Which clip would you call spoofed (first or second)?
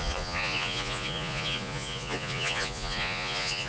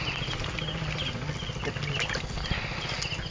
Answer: first